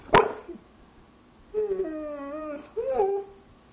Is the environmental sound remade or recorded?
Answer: recorded